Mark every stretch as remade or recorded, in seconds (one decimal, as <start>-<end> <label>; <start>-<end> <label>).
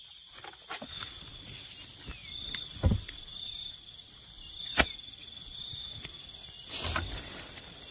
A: 0.0-7.9 recorded